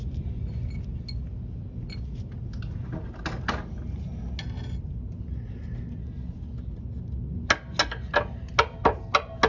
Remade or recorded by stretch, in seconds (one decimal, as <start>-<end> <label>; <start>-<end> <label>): 0.0-9.5 recorded